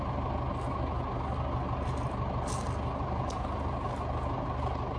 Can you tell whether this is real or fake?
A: real